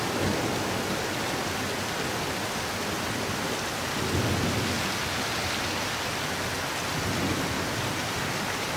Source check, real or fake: real